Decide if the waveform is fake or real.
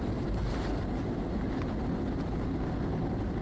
real